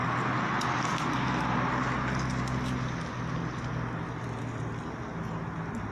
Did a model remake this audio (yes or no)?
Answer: no